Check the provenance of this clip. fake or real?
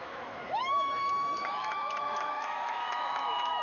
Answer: fake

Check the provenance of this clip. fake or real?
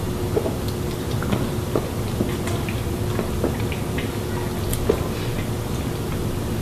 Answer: real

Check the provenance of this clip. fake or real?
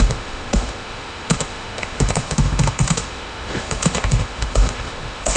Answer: fake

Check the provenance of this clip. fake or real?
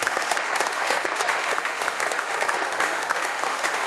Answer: fake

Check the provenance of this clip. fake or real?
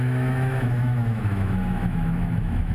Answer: fake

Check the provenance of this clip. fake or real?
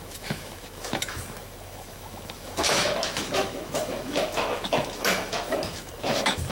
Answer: fake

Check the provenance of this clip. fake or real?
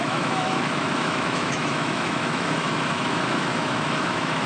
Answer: fake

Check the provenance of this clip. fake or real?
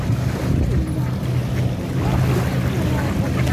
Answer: real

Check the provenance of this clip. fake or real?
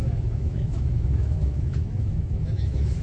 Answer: fake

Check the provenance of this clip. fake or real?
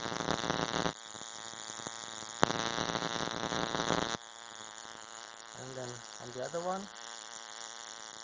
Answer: real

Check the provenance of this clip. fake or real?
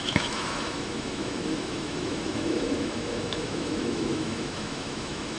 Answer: fake